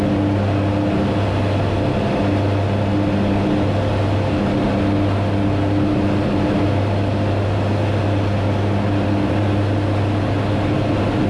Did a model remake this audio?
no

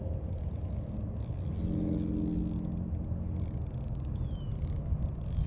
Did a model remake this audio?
no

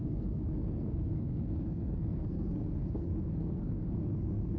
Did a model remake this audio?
yes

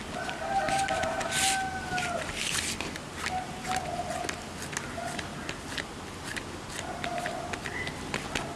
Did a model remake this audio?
no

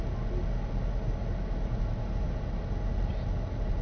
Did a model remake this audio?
no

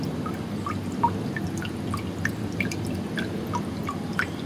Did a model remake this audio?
no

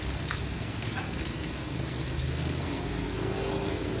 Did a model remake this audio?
yes